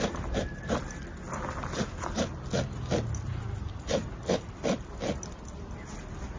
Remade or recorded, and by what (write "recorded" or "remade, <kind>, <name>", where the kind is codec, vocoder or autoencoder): recorded